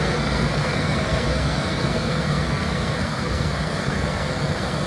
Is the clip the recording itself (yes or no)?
no